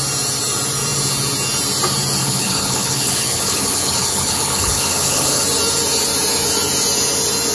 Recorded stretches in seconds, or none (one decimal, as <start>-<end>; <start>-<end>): 0.0-2.2; 5.4-7.5